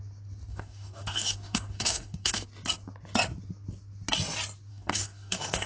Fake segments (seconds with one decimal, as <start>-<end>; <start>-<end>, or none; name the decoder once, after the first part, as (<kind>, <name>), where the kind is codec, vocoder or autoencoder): 0.5-2.4 (codec, DAC); 4.7-5.7